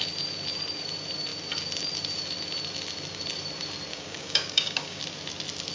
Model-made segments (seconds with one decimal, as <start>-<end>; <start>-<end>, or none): 3.9-5.0